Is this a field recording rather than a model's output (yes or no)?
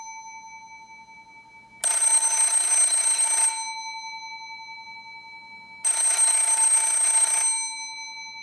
yes